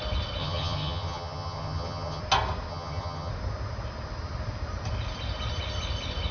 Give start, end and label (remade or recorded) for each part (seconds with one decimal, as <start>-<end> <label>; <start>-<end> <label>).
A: 0.0-0.4 recorded; 0.4-2.2 remade; 2.2-2.7 recorded; 2.7-3.3 remade; 3.3-6.3 recorded